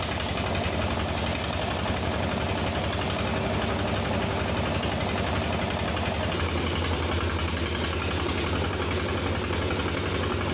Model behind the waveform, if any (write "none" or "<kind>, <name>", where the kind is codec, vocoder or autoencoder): none